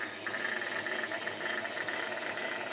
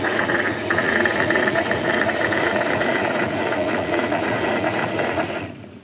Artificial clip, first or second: second